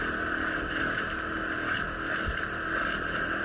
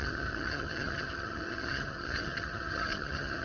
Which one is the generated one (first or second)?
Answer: second